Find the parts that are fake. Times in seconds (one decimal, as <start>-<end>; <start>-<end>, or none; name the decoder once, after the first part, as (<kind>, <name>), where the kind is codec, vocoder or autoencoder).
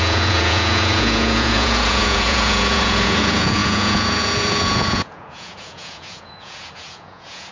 0.0-7.5 (vocoder, Vocos)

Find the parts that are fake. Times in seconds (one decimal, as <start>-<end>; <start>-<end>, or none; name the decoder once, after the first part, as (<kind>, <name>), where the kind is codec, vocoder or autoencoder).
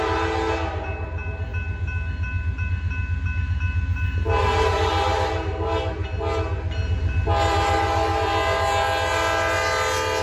none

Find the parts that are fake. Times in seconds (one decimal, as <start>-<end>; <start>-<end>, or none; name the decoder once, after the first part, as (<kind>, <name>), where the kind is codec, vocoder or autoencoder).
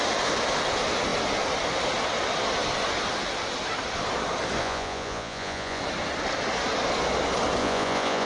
4.6-5.8 (vocoder, Vocos); 7.6-8.3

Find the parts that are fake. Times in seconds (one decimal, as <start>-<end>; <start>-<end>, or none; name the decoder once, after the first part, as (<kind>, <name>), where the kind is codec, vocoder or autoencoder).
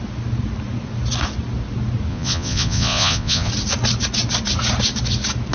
2.1-3.5 (vocoder, Vocos)